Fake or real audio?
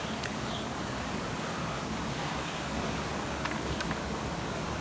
fake